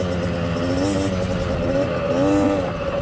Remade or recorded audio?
recorded